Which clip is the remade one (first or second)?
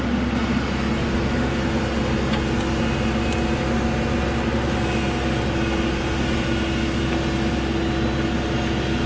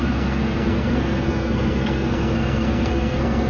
second